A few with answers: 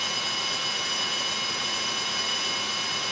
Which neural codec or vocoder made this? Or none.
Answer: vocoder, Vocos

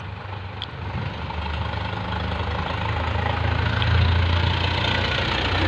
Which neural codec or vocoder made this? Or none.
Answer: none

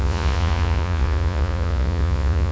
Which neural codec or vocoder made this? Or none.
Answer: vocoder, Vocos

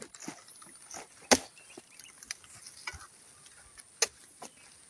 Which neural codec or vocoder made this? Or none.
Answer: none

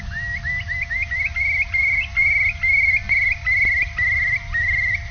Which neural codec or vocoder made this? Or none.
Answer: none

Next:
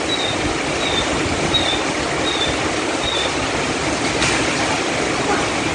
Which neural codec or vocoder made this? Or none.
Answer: none